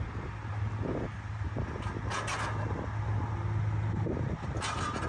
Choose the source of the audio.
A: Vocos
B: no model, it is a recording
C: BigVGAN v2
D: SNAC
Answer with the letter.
B